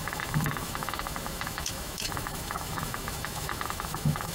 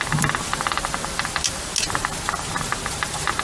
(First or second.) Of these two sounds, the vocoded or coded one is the first